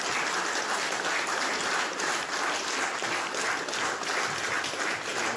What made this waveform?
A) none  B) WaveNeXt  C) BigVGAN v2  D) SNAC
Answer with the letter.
A